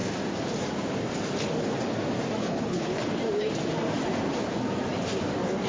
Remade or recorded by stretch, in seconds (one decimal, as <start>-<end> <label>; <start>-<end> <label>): 0.0-2.4 recorded; 2.4-3.0 remade; 3.0-5.7 recorded